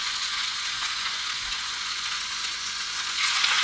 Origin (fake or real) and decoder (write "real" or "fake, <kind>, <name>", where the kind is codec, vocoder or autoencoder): fake, vocoder, Vocos